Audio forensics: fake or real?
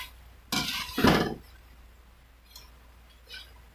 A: real